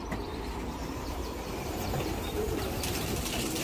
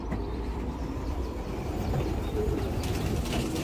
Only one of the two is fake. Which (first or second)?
first